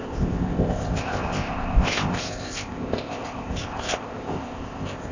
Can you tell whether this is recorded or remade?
remade